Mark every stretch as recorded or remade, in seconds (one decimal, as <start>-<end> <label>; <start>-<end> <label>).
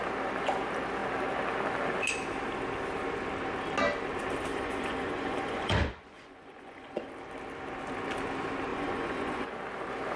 0.0-4.5 recorded; 4.5-7.1 remade; 7.1-8.7 recorded; 8.7-9.5 remade; 9.5-10.2 recorded